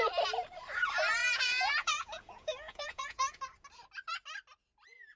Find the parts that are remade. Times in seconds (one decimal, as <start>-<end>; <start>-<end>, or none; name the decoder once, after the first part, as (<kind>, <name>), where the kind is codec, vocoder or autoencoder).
1.2-3.4 (vocoder, Vocos)